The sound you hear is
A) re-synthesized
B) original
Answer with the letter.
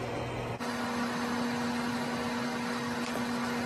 B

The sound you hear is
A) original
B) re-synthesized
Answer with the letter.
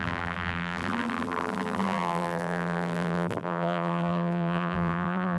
B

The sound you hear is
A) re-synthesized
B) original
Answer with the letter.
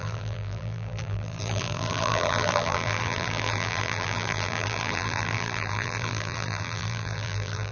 A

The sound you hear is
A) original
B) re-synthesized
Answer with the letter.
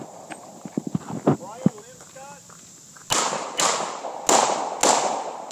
A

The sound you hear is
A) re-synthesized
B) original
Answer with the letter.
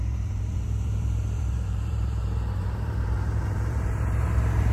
A